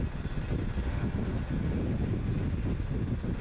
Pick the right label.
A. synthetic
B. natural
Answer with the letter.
B